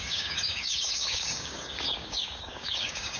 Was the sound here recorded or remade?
remade